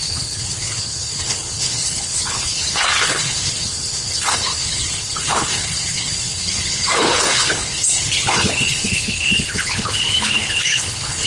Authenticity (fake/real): fake